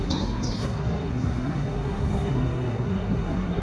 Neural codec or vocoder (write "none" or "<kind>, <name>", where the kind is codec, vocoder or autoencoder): codec, SNAC